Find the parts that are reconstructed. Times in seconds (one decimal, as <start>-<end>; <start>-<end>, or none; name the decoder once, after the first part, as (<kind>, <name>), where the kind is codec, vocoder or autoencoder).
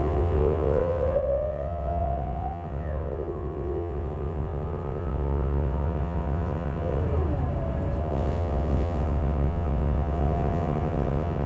0.0-7.0 (vocoder, WaveNeXt); 8.0-11.5